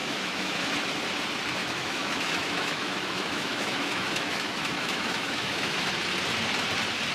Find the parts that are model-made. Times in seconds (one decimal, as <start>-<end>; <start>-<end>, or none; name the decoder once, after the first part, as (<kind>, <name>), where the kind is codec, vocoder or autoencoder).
0.0-0.7 (autoencoder, DAC-VAE); 1.6-5.9